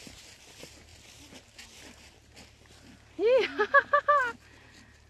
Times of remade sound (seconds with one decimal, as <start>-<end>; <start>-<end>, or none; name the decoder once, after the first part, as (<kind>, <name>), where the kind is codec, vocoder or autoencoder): none